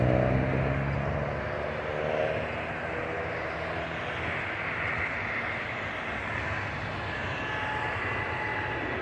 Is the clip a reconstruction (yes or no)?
no